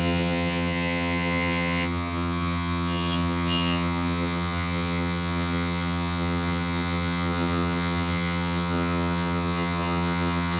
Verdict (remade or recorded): remade